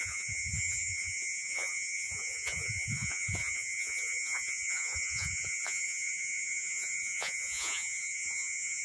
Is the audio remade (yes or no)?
yes